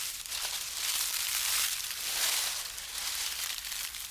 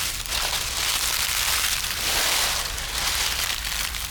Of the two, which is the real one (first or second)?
second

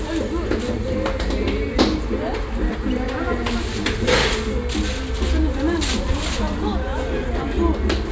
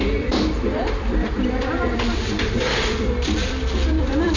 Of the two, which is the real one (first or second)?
first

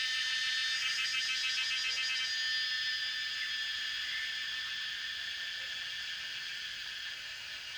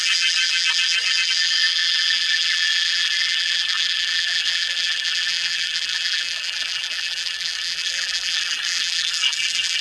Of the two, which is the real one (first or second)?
first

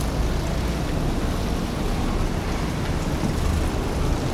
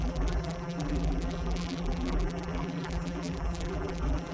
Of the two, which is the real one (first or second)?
first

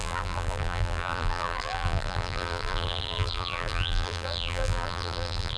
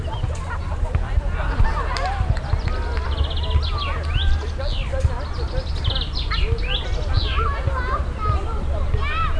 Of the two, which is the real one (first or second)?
second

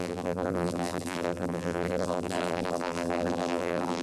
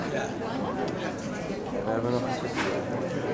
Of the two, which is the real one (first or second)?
second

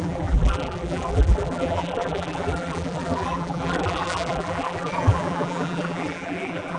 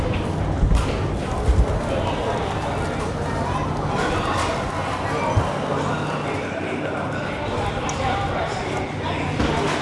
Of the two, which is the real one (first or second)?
second